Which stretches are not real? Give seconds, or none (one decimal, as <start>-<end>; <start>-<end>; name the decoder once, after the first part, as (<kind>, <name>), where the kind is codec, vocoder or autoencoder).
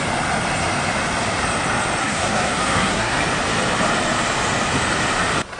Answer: 2.0-3.2 (codec, SNAC)